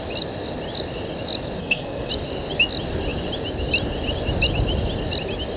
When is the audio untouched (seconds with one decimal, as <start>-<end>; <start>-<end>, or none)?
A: 0.0-1.6; 2.1-5.6